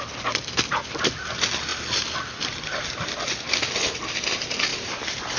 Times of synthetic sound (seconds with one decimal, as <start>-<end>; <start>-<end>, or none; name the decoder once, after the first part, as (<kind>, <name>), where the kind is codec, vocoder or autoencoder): 4.7-5.4 (vocoder, BigVGAN v2)